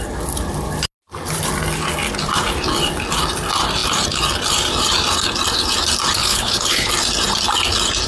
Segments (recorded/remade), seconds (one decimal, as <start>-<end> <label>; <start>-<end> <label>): 0.0-6.2 recorded; 6.2-6.9 remade; 6.9-8.1 recorded

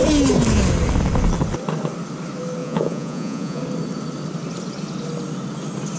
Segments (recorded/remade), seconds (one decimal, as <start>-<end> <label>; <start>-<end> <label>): 0.0-2.6 recorded; 2.6-3.6 remade; 3.6-6.0 recorded

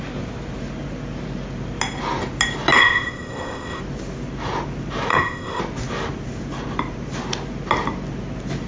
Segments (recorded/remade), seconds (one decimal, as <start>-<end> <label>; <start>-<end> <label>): 0.0-2.8 recorded; 2.8-3.8 remade; 3.8-5.1 recorded; 5.1-5.6 remade; 5.6-8.7 recorded

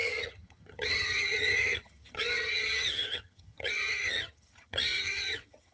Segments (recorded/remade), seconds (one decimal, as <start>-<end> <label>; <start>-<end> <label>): 0.0-5.7 remade

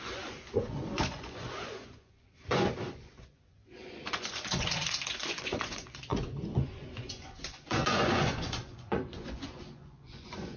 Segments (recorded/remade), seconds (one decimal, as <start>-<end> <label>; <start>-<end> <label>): 0.0-10.6 remade

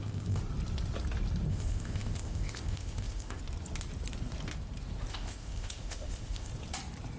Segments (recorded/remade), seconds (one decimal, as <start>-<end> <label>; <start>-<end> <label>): 0.0-0.4 remade; 0.4-1.5 recorded; 1.5-3.4 remade; 3.4-5.1 recorded; 5.1-6.5 remade; 6.5-7.2 recorded